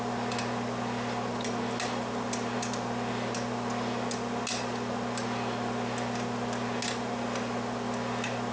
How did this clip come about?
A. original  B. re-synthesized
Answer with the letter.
A